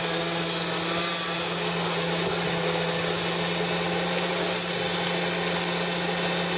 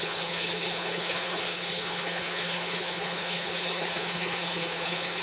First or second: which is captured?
first